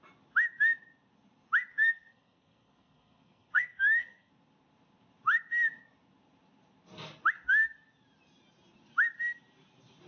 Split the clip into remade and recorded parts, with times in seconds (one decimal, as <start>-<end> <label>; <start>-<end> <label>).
0.0-1.7 recorded; 1.7-4.3 remade; 4.3-10.1 recorded